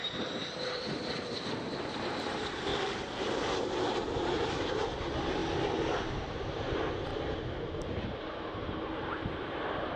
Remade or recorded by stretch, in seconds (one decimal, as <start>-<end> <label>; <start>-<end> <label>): 0.0-2.7 remade; 2.7-3.5 recorded; 3.5-5.4 remade; 5.4-6.0 recorded; 6.0-10.0 remade

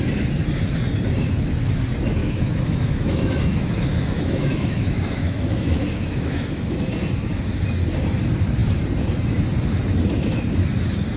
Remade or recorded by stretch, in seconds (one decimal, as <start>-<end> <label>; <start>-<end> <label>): 0.0-2.2 recorded; 2.2-6.7 remade; 6.7-11.2 recorded